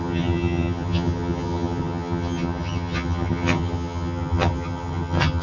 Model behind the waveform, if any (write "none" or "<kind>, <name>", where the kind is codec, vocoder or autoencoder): vocoder, HiFi-GAN